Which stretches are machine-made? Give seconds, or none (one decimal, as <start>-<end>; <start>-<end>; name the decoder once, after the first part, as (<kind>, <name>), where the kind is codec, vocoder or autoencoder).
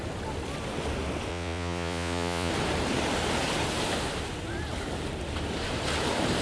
1.3-2.5 (vocoder, Vocos)